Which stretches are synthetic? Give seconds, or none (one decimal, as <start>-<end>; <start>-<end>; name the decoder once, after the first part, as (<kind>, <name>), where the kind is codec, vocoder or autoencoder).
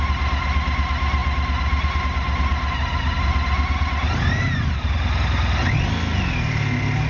none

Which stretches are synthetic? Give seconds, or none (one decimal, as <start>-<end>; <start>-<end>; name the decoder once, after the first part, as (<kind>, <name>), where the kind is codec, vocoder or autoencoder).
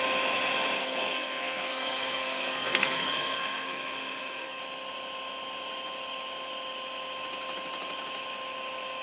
0.8-4.6 (codec, SNAC)